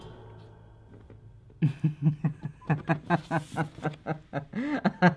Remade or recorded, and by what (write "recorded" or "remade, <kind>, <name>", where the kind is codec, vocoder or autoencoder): recorded